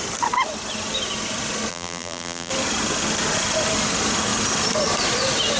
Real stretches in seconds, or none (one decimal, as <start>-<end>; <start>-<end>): 0.0-1.7; 2.5-5.6